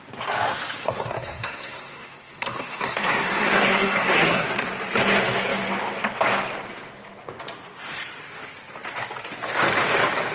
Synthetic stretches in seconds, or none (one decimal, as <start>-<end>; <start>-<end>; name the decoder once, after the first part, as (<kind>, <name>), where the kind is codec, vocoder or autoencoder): 0.8-4.5 (codec, SNAC)